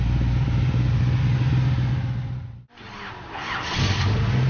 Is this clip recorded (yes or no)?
yes